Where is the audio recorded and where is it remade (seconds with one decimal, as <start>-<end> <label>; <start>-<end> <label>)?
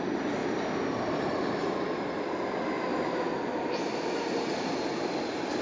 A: 0.0-0.4 recorded; 0.4-1.6 remade; 1.6-2.9 recorded; 2.9-3.8 remade; 3.8-5.6 recorded